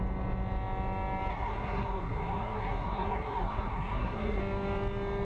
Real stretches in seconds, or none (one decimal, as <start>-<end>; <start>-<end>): 0.0-1.3; 4.4-5.2